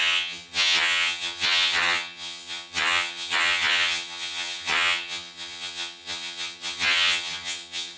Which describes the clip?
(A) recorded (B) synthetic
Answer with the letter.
B